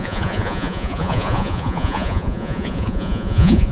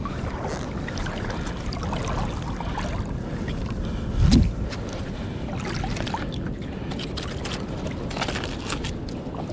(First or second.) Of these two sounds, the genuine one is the second